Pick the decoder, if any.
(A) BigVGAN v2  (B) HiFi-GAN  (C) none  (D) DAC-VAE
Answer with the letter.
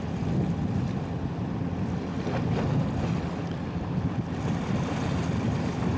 C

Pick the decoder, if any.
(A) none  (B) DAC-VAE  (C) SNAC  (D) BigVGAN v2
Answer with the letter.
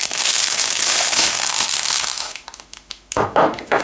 B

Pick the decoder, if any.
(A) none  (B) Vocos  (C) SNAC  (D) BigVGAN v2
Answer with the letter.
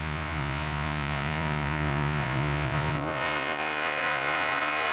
B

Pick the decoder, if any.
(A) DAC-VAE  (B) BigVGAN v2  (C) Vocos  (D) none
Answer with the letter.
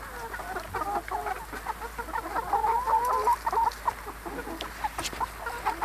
D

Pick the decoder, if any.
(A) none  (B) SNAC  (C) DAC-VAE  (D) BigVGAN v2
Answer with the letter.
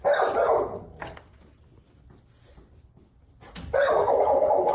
A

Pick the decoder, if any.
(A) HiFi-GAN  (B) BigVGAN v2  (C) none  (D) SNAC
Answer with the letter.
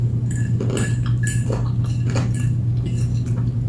C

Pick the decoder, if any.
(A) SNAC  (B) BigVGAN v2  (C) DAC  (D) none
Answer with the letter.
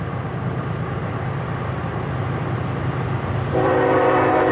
B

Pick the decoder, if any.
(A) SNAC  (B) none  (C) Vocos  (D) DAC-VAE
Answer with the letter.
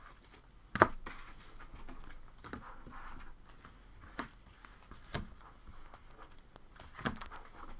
B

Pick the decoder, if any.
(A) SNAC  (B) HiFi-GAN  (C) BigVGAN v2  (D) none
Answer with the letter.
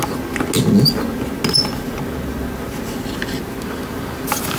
D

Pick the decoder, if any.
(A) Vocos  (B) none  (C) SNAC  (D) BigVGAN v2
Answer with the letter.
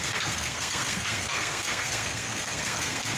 C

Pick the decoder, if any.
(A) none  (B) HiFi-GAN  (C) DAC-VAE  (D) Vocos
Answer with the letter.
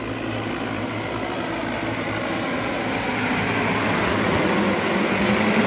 A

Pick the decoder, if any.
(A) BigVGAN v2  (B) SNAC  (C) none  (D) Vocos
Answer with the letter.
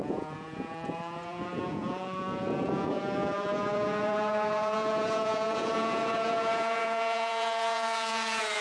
D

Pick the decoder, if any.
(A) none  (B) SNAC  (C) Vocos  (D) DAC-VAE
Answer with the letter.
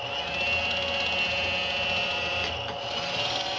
A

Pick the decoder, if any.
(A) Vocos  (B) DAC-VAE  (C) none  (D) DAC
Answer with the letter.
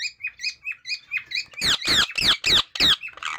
C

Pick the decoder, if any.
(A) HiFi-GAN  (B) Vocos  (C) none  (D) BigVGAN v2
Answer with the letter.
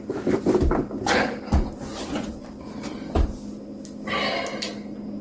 C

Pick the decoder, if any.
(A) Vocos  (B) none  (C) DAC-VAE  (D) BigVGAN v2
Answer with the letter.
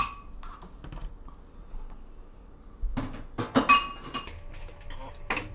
B